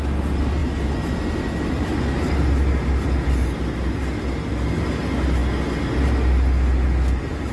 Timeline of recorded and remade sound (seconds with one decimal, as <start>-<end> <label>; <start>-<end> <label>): 0.0-7.5 recorded